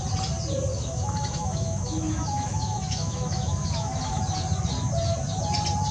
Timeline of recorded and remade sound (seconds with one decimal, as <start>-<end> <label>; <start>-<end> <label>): 0.0-0.7 recorded; 0.7-4.2 remade; 4.2-5.9 recorded